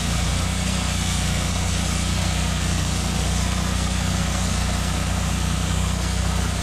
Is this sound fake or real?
fake